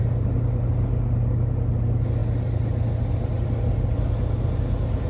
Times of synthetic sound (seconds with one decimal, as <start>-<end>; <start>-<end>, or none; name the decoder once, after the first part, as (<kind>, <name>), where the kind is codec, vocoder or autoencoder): none